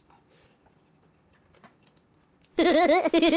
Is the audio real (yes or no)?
yes